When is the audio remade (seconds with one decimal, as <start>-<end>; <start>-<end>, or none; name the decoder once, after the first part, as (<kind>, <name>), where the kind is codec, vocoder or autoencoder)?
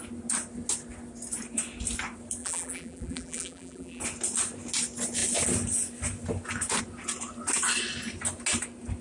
2.4-4.0 (vocoder, BigVGAN v2)